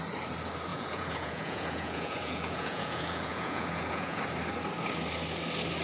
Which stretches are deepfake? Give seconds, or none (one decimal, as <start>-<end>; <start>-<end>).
0.7-4.2